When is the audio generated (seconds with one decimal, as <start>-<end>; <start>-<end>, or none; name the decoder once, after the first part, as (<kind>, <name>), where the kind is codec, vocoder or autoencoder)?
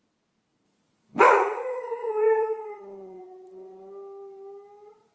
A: 0.5-3.2 (vocoder, Vocos)